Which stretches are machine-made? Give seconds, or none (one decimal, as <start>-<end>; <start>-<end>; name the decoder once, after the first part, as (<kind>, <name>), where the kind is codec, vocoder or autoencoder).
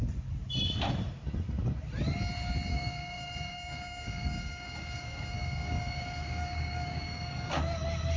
2.7-7.6 (codec, DAC)